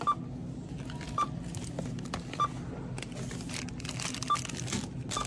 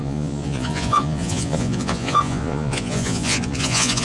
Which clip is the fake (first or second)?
second